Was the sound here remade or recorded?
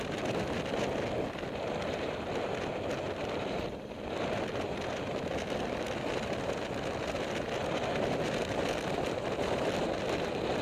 recorded